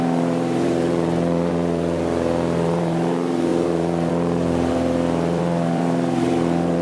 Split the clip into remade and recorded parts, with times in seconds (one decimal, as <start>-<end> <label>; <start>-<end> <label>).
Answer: 0.0-6.8 remade

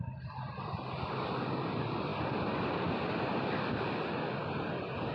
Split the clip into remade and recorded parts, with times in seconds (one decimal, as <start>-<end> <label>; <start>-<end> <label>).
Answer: 0.0-5.1 recorded

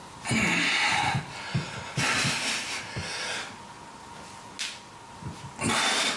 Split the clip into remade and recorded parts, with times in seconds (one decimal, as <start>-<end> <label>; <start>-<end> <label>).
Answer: 0.0-6.2 recorded

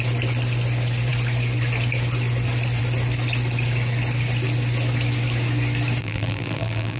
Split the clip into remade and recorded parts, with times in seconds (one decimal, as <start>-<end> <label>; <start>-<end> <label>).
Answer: 0.0-6.0 recorded; 6.0-7.0 remade

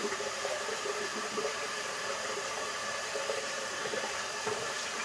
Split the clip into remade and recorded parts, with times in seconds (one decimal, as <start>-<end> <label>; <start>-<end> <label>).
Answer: 0.0-5.0 remade

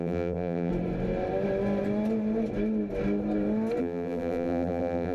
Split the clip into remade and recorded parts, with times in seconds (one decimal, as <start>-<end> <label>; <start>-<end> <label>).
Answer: 0.0-0.7 remade; 0.7-3.8 recorded; 3.8-5.1 remade